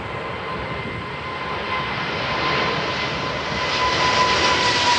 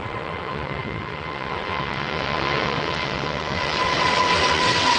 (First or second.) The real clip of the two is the first